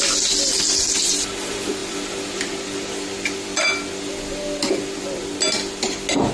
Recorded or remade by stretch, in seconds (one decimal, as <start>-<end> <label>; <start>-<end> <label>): 0.0-6.3 recorded